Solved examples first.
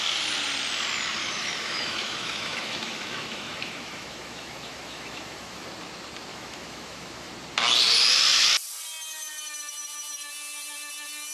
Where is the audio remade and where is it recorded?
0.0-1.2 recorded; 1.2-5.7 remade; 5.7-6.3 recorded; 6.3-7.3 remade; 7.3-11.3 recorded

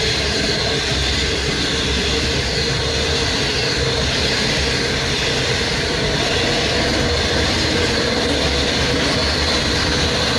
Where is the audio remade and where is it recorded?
0.0-10.4 recorded

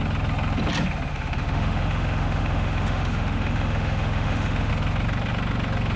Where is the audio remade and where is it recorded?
0.0-1.1 recorded; 1.1-4.7 remade; 4.7-6.0 recorded